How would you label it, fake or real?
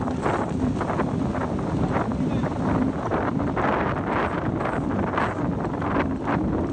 real